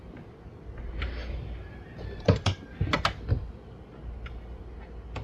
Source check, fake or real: real